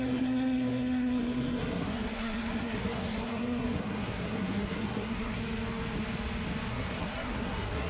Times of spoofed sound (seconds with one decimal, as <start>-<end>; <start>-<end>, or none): 0.0-5.4; 6.7-7.9